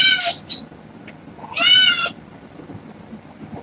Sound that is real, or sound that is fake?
real